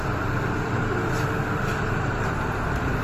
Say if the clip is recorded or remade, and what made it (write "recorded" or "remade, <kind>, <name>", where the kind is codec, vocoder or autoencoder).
remade, vocoder, BigVGAN v2